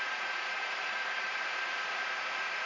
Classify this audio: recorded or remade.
remade